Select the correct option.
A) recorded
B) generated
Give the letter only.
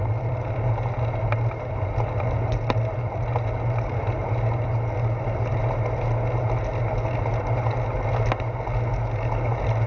A